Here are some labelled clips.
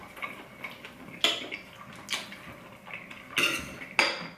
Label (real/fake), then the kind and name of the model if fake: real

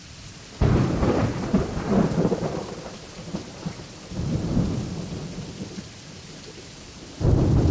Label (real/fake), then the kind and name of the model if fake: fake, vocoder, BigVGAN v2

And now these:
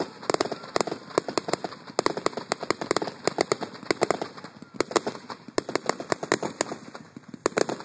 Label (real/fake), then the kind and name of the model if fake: real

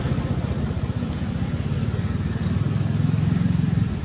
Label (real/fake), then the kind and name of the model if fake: real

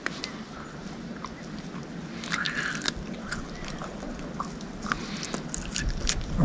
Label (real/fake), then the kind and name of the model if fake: real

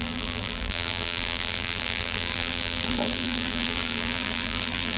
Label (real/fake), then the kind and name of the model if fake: fake, vocoder, BigVGAN v2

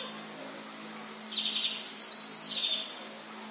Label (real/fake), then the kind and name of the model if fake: real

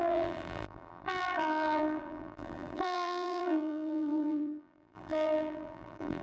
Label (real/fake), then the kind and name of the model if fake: fake, vocoder, BigVGAN v2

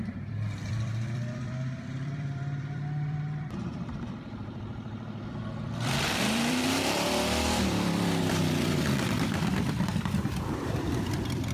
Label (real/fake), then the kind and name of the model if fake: fake, vocoder, BigVGAN v2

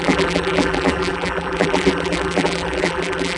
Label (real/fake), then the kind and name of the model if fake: fake, vocoder, BigVGAN v2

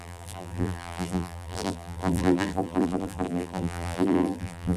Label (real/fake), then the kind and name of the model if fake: fake, vocoder, BigVGAN v2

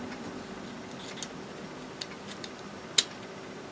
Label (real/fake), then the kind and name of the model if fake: real